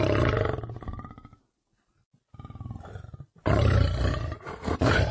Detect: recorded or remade recorded